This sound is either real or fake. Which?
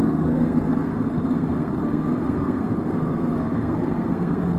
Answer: fake